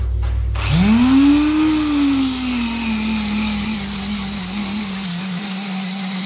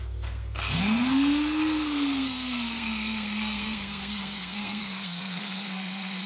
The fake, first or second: second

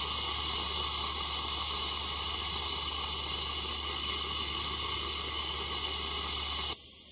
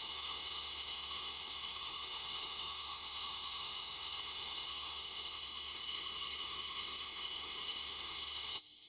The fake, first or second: second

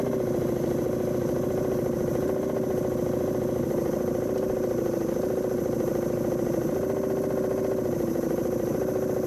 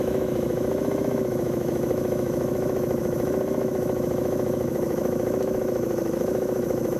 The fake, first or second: second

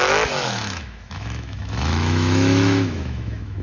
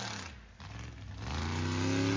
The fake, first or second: first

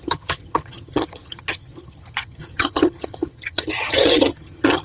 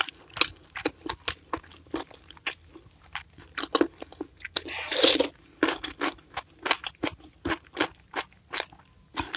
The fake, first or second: first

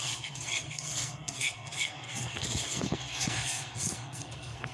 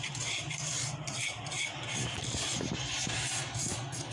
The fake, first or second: first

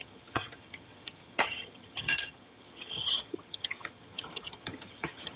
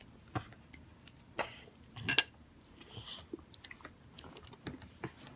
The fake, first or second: first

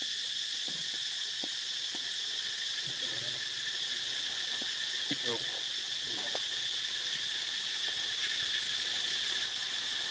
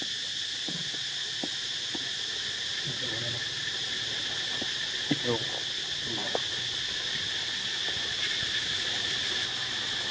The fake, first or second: first